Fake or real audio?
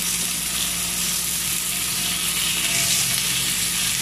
real